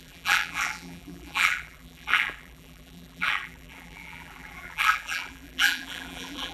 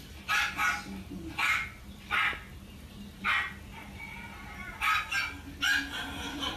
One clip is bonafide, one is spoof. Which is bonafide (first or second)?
second